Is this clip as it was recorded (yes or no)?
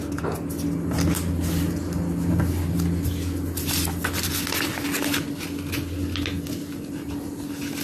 yes